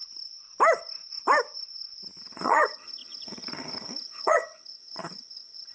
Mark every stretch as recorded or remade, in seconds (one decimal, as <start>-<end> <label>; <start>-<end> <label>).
0.0-2.2 recorded; 2.2-5.7 remade